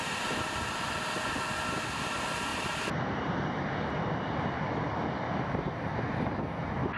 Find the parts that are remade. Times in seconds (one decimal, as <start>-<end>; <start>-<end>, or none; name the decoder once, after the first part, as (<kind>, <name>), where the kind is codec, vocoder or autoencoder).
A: 2.5-3.3 (vocoder, BigVGAN v2); 5.9-6.4